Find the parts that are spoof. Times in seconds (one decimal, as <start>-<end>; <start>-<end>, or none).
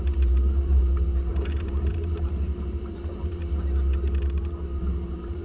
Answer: 0.0-0.8; 1.3-3.4; 4.8-5.4